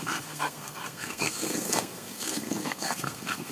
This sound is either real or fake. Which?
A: fake